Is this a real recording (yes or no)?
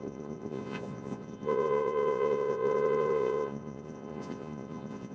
no